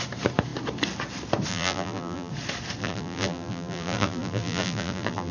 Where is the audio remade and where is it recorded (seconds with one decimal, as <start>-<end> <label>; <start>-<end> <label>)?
0.0-1.5 recorded; 1.5-2.3 remade; 2.3-2.8 recorded; 2.8-5.3 remade